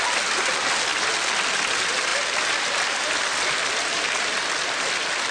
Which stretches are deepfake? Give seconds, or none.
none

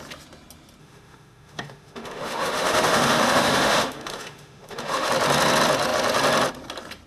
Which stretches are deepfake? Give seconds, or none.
0.8-5.1 (autoencoder, DAC-VAE)

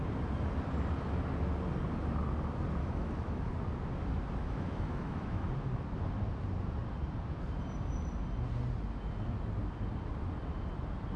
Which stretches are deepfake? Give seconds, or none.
2.8-3.5 (autoencoder, DAC-VAE); 4.4-5.5

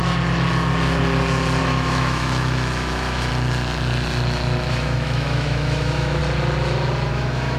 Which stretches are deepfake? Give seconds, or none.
1.6-3.3 (autoencoder, DAC-VAE); 4.7-6.2; 7.1-7.6

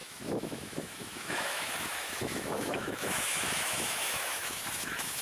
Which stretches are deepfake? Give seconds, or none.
0.0-5.2 (autoencoder, DAC-VAE)